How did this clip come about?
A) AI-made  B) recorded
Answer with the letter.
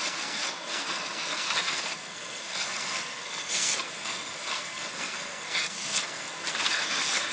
A